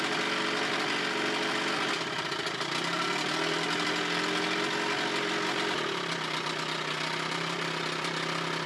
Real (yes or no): yes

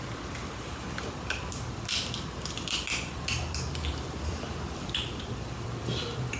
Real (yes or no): no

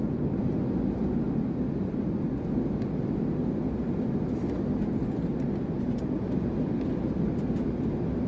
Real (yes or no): yes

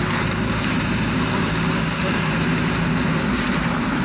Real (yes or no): no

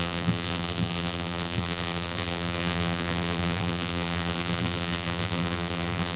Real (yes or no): no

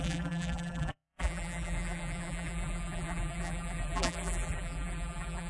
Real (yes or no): no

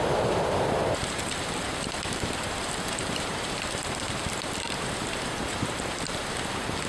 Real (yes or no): no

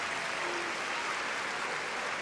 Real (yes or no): yes